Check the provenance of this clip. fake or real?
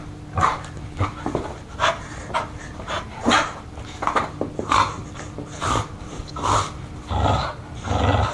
real